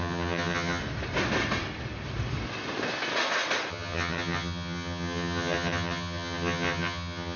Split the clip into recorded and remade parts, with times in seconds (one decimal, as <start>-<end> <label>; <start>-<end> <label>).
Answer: 0.0-0.8 remade; 0.8-3.7 recorded; 3.7-7.4 remade